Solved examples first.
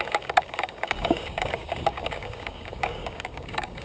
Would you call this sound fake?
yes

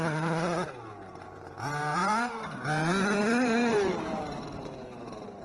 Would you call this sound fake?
yes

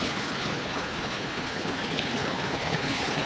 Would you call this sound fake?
yes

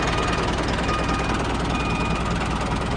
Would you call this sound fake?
no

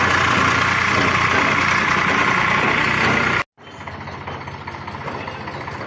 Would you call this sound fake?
no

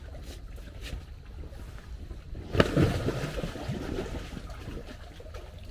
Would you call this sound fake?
no